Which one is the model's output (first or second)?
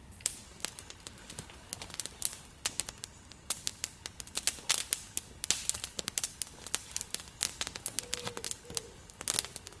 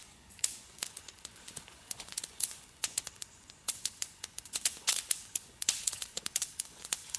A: second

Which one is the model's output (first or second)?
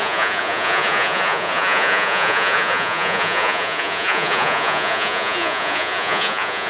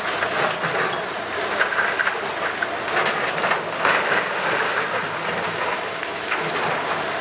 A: first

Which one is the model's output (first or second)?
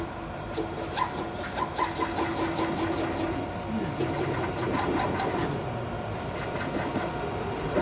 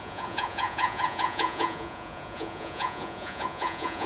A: second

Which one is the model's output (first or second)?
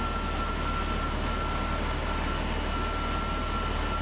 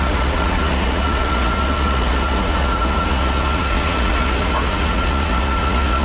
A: second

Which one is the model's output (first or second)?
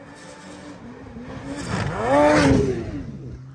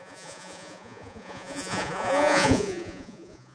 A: second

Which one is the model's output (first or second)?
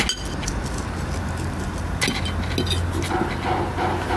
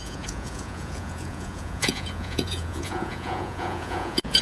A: second